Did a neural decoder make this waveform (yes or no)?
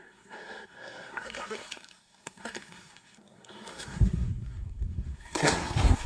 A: yes